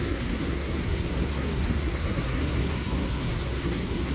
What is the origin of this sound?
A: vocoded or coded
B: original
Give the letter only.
A